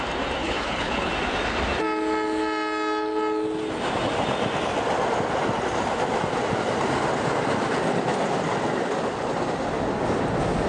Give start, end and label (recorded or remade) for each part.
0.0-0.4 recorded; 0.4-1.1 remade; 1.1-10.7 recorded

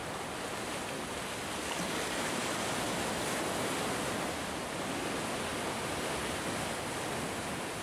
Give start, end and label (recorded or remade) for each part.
0.0-7.8 recorded

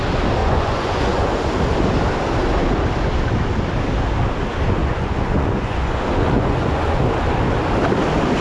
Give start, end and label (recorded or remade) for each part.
0.0-0.4 recorded; 0.4-1.3 remade; 1.3-4.8 recorded; 4.8-7.0 remade; 7.0-8.4 recorded

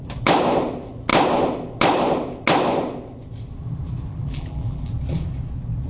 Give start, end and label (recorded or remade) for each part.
0.0-4.1 recorded; 4.1-4.9 remade; 4.9-5.9 recorded

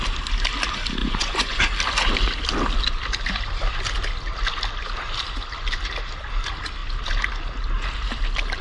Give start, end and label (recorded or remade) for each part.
0.0-1.0 recorded; 1.0-1.6 remade; 1.6-8.6 recorded

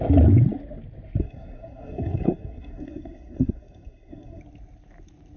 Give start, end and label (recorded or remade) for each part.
0.0-1.2 recorded; 1.2-4.4 remade; 4.4-5.4 recorded